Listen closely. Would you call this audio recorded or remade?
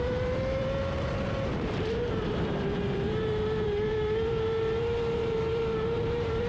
remade